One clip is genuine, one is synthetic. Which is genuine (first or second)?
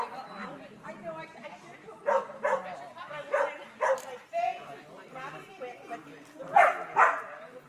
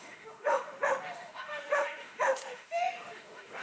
first